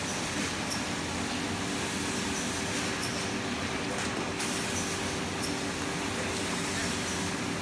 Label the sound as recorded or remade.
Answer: recorded